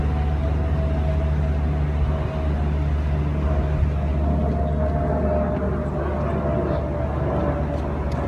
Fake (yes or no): no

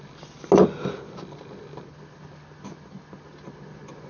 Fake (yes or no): no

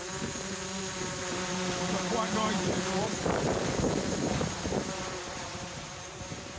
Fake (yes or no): yes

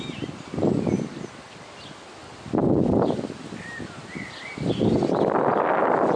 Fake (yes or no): no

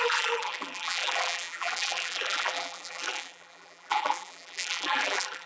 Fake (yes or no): yes